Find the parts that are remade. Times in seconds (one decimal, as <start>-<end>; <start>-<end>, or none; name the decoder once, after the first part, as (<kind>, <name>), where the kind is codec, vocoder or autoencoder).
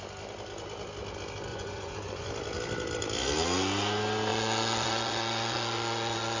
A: 1.5-2.3 (vocoder, Vocos); 4.3-6.4